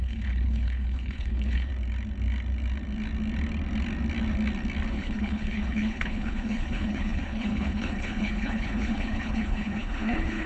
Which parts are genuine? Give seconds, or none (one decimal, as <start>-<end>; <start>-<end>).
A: 1.7-4.9